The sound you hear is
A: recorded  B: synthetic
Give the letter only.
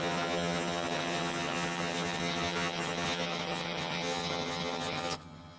B